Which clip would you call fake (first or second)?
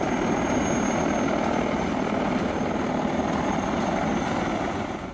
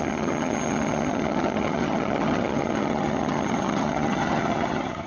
second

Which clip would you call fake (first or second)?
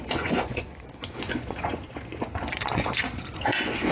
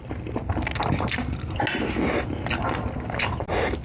first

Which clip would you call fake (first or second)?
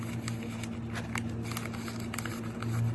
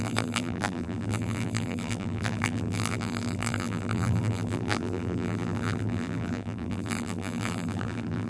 second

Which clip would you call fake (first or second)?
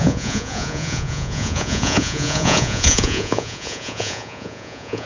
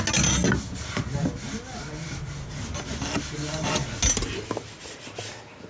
first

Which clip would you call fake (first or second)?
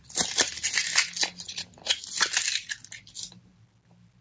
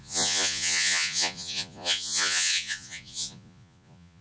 second